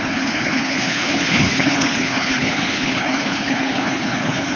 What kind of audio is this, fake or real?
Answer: fake